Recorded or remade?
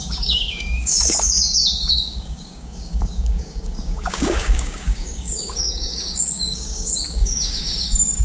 remade